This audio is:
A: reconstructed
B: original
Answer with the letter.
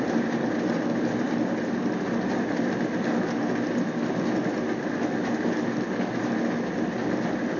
B